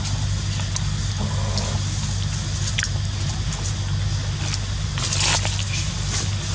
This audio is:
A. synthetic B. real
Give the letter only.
B